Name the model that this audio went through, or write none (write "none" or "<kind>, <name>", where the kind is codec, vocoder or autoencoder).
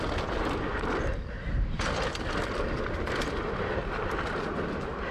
none